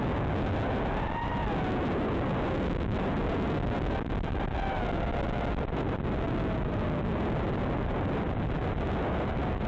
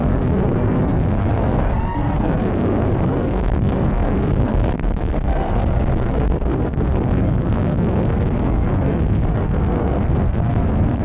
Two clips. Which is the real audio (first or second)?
first